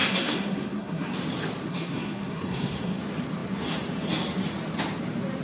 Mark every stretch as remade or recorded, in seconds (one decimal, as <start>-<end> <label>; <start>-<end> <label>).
0.0-1.1 remade; 1.1-1.7 recorded; 1.7-3.0 remade; 3.0-5.4 recorded